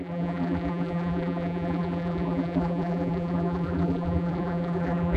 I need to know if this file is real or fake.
fake